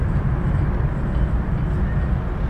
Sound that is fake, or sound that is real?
real